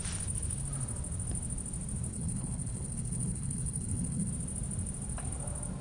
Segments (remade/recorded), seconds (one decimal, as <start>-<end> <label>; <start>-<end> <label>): 0.0-2.1 recorded; 2.1-4.3 remade; 4.3-5.8 recorded